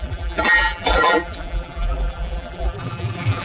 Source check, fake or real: fake